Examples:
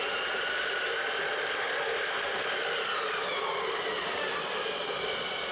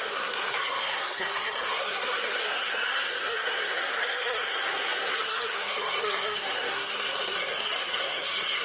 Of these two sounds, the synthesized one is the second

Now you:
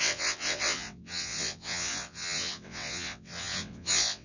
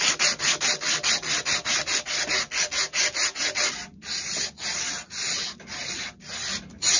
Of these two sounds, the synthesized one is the first